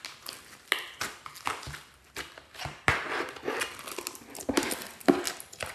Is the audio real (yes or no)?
yes